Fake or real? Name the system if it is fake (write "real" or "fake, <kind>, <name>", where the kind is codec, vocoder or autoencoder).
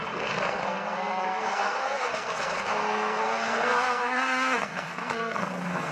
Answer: fake, codec, SNAC